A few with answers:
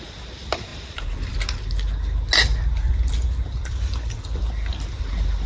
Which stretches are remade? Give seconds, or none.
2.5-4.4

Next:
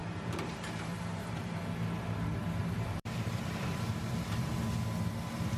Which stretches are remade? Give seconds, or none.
0.0-1.6; 2.6-4.5

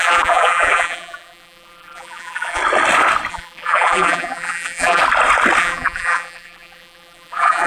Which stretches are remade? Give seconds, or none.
0.0-2.6; 3.3-5.0; 5.6-7.7

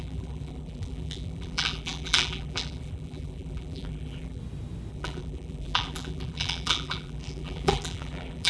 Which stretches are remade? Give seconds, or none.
0.0-4.4; 4.9-8.5